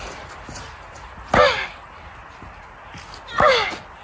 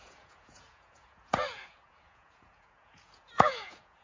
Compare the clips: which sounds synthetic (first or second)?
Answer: second